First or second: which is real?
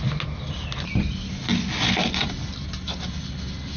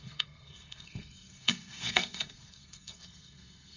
first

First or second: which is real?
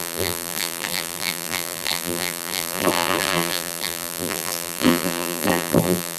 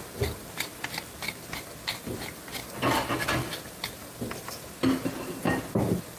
second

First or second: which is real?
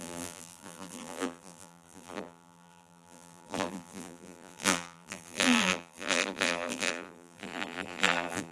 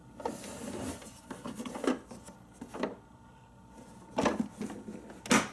second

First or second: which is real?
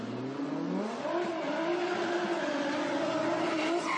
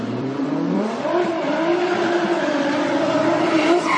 first